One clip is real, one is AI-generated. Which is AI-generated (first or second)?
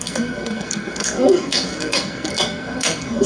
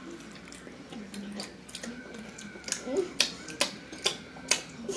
first